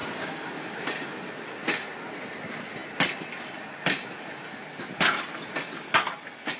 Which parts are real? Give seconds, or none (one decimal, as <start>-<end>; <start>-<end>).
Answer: 0.6-6.6